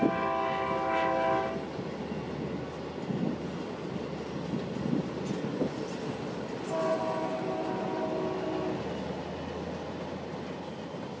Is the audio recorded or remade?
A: recorded